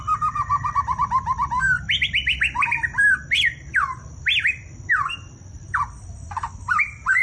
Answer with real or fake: real